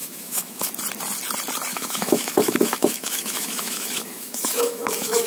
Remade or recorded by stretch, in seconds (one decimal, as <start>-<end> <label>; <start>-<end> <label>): 0.0-0.7 remade; 0.7-1.7 recorded; 1.7-5.3 remade